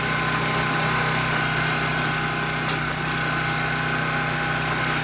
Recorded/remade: recorded